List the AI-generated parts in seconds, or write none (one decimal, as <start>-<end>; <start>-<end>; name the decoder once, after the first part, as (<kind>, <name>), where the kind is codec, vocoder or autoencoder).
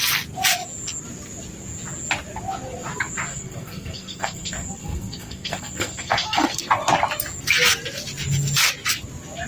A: 3.3-6.7 (codec, SNAC)